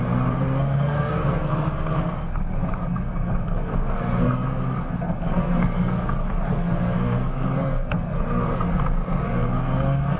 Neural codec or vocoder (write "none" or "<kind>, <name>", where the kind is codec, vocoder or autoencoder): codec, SNAC